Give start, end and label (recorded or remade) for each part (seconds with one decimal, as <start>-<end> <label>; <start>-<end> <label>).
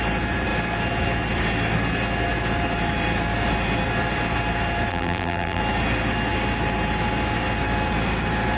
0.0-4.9 recorded; 4.9-5.6 remade; 5.6-8.6 recorded